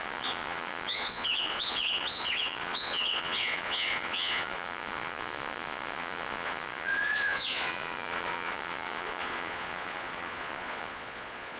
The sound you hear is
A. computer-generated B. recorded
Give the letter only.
A